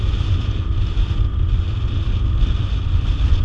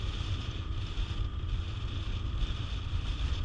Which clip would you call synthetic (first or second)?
second